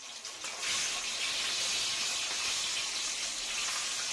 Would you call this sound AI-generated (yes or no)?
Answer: no